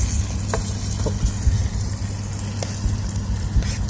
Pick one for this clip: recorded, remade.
recorded